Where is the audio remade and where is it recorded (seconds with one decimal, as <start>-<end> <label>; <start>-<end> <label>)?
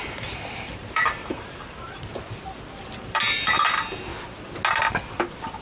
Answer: 0.0-2.1 remade; 2.1-3.0 recorded; 3.0-4.1 remade; 4.1-5.6 recorded